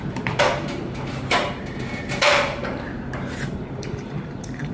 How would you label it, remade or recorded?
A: remade